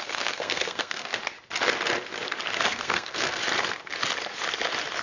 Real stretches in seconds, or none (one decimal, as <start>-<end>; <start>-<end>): 1.2-2.6; 3.4-5.0